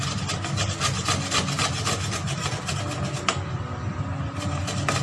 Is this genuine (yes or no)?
yes